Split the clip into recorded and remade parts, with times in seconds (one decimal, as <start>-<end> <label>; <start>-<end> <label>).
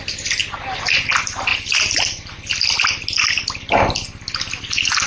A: 0.0-5.1 recorded